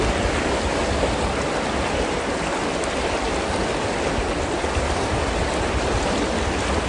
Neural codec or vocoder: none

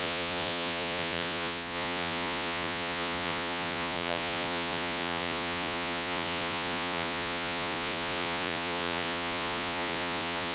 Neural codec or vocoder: vocoder, Vocos